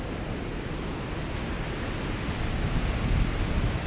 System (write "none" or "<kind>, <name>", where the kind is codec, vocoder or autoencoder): none